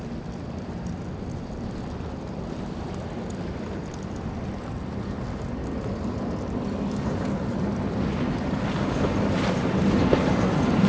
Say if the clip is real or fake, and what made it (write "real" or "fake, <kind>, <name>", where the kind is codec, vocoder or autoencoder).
real